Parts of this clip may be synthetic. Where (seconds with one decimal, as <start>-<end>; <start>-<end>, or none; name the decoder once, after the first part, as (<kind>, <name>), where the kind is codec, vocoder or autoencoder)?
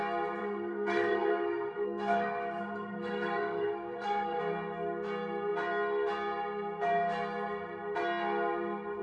0.4-4.4 (codec, SNAC)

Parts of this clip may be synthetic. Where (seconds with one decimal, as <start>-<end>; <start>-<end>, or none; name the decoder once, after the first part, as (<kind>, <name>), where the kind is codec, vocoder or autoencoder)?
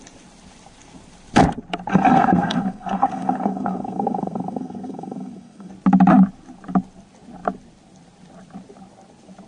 1.9-5.7 (codec, SNAC)